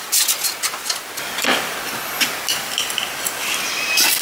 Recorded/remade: recorded